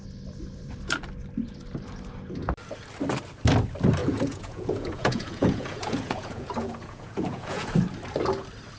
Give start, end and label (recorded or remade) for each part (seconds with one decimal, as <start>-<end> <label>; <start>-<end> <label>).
0.0-4.0 recorded; 4.0-7.7 remade; 7.7-8.8 recorded